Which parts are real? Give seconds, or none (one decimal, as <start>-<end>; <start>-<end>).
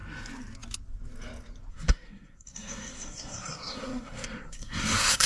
0.0-1.7